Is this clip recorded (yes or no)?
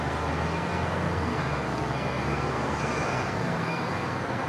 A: no